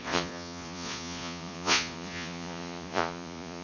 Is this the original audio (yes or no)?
no